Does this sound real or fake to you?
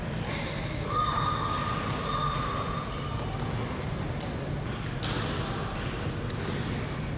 real